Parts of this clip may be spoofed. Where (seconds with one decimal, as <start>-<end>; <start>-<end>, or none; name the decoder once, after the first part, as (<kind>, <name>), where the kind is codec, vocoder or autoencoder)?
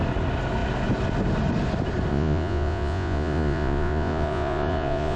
2.1-5.2 (vocoder, Vocos)